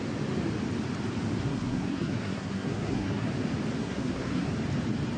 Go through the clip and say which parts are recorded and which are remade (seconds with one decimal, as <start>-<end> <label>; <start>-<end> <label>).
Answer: 0.0-1.4 recorded; 1.4-3.3 remade; 3.3-3.8 recorded; 3.8-4.5 remade; 4.5-5.2 recorded